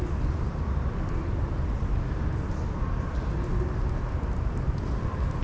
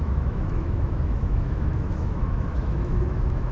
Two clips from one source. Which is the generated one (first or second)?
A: second